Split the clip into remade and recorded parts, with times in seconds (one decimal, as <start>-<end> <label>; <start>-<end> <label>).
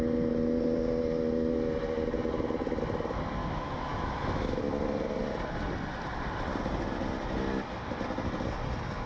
0.0-3.4 recorded; 3.4-4.6 remade; 4.6-9.1 recorded